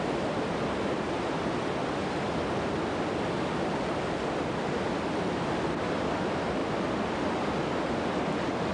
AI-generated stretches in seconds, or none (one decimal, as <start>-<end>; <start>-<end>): none